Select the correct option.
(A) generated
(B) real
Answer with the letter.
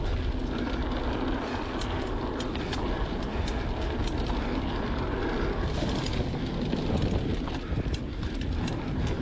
B